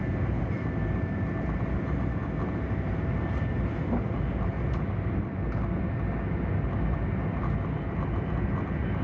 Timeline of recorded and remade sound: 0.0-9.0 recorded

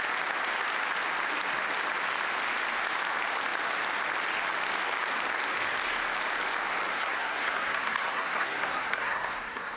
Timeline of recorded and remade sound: 0.0-6.9 recorded; 6.9-9.8 remade

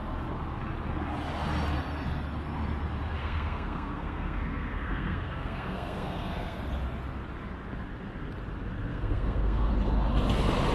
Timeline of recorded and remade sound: 0.0-3.2 recorded; 3.2-6.6 remade; 6.6-8.9 recorded; 8.9-9.7 remade; 9.7-10.7 recorded

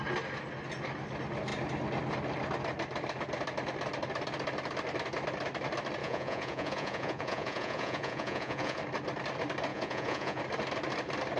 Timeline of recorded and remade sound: 0.0-6.0 recorded; 6.0-8.8 remade; 8.8-9.7 recorded; 9.7-10.4 remade; 10.4-11.4 recorded

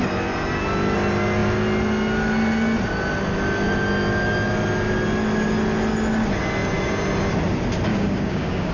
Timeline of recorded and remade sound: 0.0-7.9 recorded; 7.9-8.7 remade

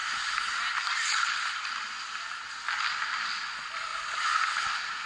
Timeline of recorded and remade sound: 0.0-5.1 recorded